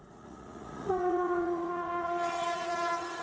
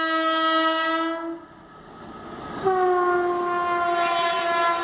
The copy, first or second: first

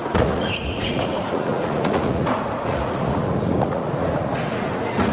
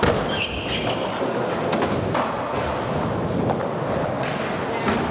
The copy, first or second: first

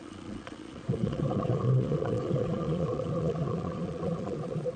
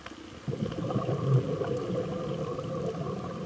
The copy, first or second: first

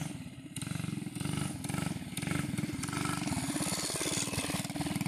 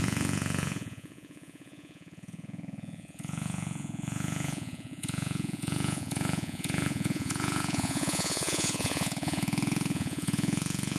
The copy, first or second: second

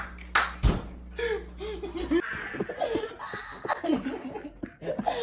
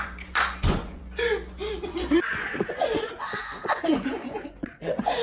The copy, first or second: second